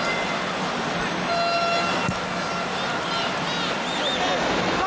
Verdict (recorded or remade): recorded